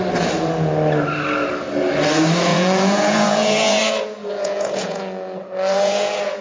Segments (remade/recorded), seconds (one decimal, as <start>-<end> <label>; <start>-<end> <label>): 0.0-2.5 recorded; 2.5-6.4 remade